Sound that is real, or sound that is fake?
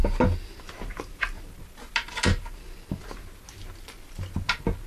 real